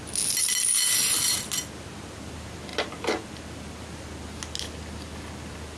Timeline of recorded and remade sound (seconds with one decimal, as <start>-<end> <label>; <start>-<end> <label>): 0.0-5.8 recorded